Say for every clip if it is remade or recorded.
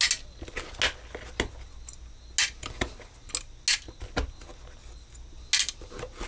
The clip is recorded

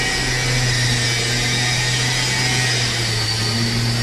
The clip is recorded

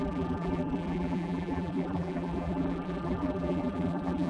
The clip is remade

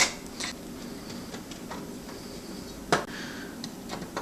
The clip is recorded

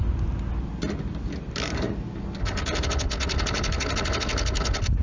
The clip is recorded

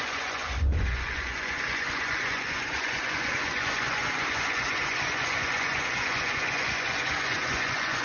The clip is remade